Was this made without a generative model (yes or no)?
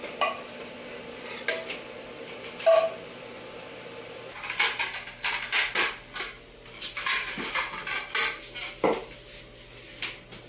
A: yes